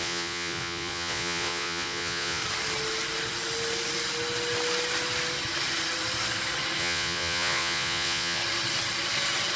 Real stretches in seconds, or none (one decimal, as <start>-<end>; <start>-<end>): 2.4-6.8; 8.4-9.6